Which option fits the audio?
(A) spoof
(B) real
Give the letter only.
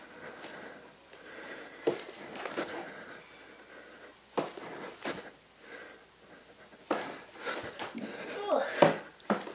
B